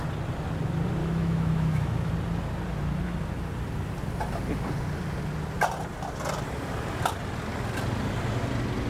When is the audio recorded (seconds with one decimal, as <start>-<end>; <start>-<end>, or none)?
0.0-1.0; 2.1-8.9